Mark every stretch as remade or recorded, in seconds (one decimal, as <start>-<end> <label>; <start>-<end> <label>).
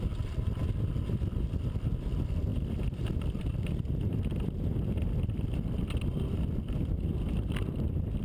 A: 0.0-8.2 recorded